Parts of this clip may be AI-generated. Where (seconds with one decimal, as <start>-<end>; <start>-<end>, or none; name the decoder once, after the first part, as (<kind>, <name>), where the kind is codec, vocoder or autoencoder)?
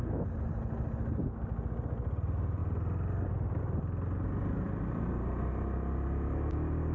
none